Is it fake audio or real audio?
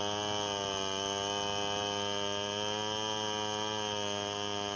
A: real